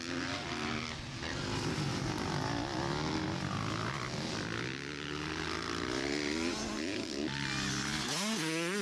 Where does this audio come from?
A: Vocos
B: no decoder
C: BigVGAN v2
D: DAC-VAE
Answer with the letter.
B